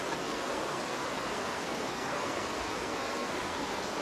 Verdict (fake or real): fake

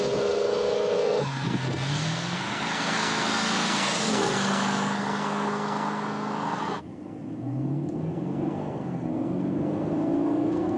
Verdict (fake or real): fake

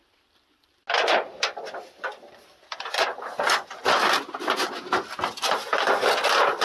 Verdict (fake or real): real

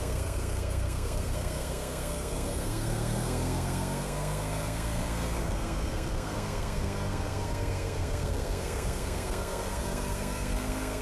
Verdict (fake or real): fake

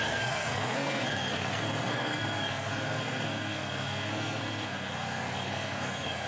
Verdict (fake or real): fake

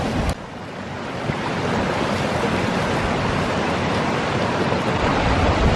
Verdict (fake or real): real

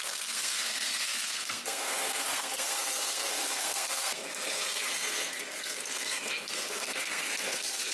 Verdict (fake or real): fake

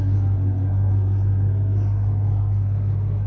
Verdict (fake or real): fake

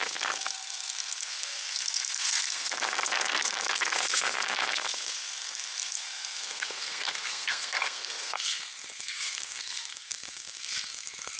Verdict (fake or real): fake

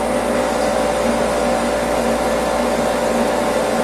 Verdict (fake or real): real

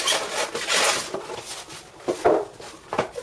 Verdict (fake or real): real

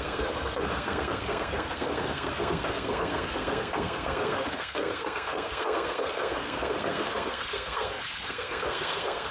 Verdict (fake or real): fake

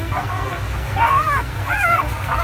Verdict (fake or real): fake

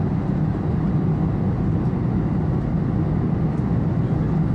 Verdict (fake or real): real